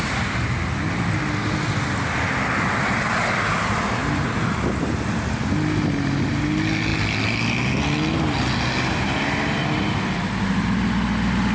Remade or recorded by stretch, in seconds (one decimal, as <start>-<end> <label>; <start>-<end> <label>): 0.0-11.5 recorded